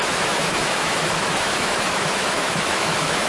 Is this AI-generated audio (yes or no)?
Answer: yes